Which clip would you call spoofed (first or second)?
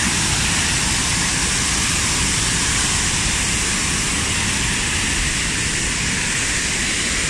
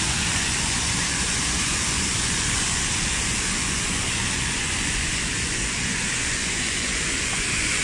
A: second